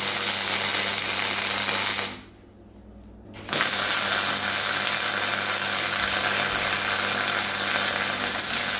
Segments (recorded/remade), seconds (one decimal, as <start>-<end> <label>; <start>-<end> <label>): 0.0-8.8 recorded